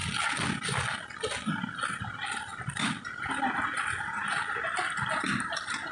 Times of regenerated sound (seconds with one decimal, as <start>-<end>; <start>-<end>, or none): 2.5-3.4